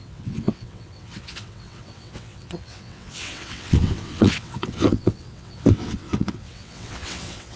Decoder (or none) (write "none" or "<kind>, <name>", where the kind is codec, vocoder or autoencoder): vocoder, WaveNeXt